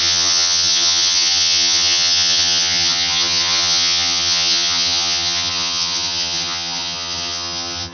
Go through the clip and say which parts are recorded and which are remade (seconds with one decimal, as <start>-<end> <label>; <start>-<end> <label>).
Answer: 0.0-7.9 remade